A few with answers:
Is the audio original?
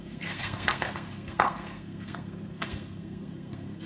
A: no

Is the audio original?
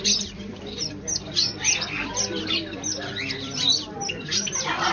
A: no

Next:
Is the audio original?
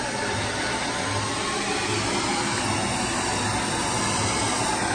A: yes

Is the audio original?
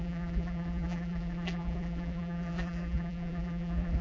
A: no